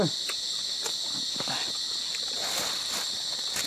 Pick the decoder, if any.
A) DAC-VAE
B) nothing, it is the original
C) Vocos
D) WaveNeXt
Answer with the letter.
B